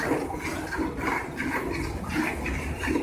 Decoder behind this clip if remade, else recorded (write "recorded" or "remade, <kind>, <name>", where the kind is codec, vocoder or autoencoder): recorded